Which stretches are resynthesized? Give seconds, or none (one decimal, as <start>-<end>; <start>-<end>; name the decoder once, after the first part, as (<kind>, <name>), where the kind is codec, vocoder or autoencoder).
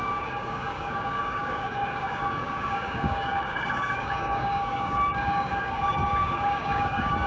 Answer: 0.0-7.3 (codec, DAC)